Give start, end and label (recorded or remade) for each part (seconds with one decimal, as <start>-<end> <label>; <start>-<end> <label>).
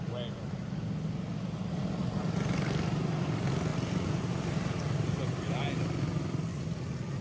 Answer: 0.0-7.2 recorded